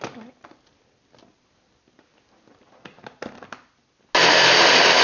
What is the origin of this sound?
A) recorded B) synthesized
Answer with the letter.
A